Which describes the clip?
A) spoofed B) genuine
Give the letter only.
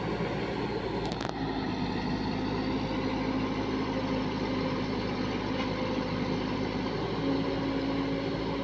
B